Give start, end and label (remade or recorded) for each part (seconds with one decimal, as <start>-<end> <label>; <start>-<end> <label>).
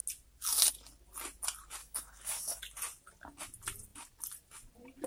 0.0-1.8 recorded; 1.8-2.6 remade; 2.6-5.1 recorded